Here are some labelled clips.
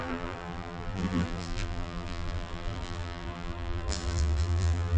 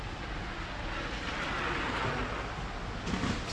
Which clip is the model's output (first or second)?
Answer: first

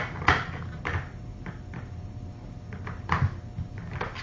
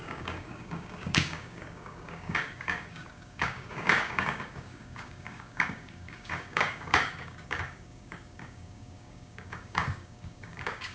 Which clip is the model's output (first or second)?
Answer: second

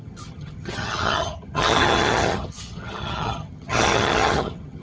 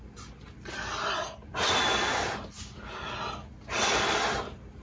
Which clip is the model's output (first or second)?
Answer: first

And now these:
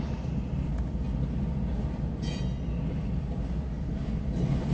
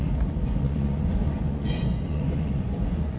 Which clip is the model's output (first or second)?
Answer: second